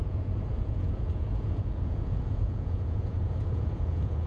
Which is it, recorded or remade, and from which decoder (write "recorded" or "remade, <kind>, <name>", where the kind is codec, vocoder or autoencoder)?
remade, vocoder, Vocos